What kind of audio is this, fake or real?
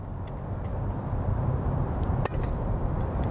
fake